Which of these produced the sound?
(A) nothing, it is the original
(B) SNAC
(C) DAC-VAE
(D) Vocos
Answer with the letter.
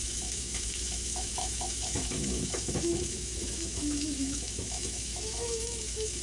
C